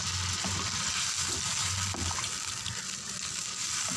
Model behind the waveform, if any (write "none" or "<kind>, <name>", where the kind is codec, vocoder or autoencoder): none